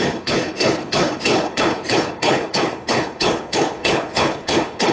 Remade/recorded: remade